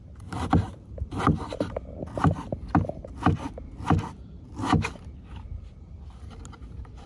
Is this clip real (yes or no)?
yes